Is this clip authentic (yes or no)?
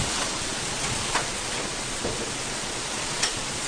no